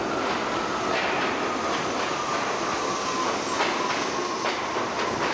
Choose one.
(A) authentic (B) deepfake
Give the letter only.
A